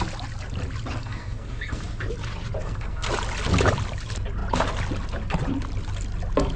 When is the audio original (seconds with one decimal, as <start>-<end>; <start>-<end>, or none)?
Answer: 0.0-1.0; 1.8-2.6; 3.1-6.6